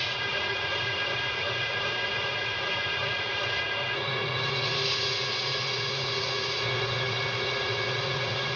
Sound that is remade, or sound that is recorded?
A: remade